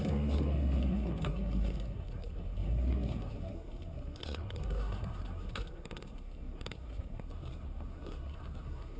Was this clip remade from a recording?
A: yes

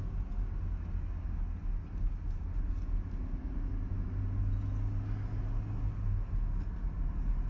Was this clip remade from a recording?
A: no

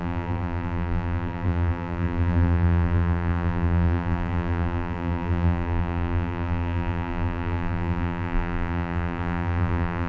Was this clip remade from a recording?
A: yes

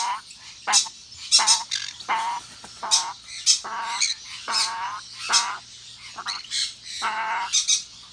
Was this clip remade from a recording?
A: no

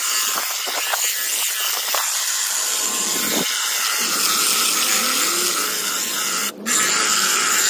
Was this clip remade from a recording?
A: no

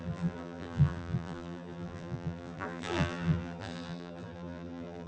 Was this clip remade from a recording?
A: yes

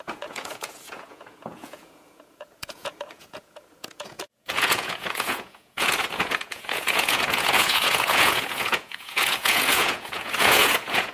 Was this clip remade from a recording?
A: yes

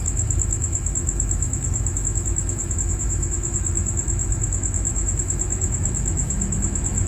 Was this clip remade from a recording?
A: yes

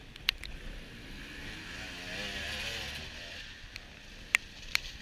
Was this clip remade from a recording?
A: no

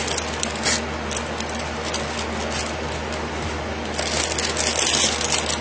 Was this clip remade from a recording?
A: no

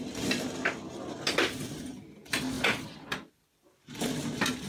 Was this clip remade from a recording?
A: no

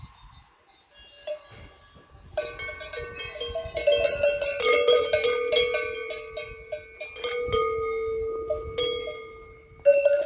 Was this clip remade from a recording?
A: no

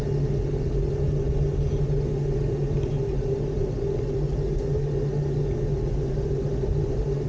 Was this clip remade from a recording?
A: no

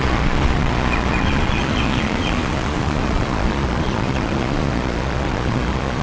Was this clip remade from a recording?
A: yes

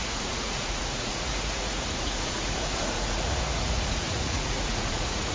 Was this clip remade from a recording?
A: yes